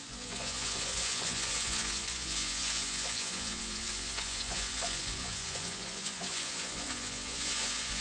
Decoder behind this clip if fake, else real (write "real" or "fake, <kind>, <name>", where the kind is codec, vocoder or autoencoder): fake, vocoder, Vocos